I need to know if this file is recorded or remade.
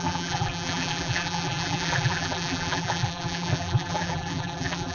remade